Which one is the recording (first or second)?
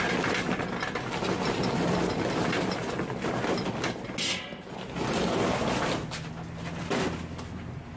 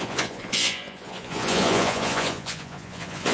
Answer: first